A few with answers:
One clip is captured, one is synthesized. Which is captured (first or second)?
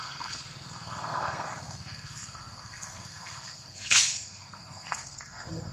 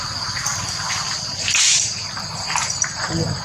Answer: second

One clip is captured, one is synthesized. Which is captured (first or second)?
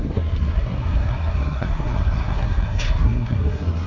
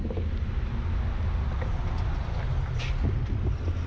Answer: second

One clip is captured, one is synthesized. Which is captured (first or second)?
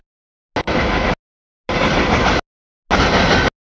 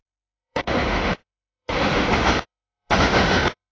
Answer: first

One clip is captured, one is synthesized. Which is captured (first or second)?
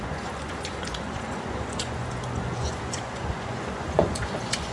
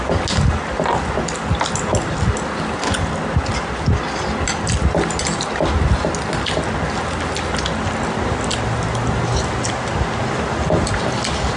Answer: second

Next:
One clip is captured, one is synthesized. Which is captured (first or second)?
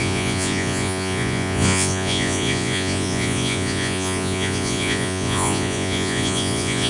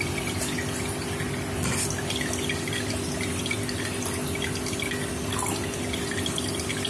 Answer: second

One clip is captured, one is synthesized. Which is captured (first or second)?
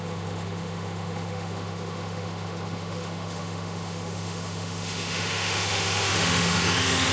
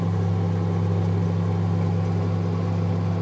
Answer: second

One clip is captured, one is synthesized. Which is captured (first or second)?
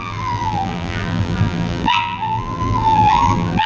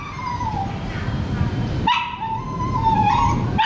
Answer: second